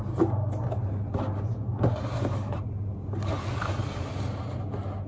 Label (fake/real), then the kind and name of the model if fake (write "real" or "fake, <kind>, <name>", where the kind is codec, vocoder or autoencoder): real